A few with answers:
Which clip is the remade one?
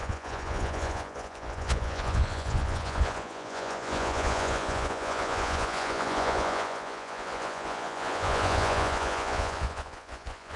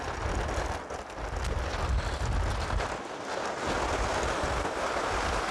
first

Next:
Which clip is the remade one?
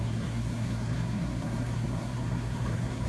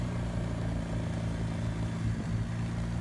first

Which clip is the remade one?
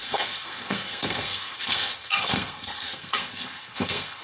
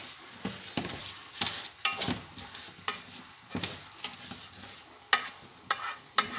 first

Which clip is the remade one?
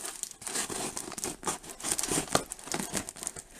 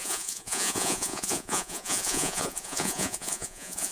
second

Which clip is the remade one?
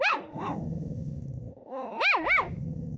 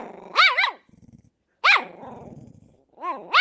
first